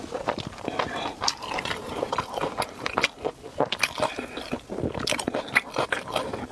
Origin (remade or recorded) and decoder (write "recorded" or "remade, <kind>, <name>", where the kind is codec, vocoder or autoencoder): recorded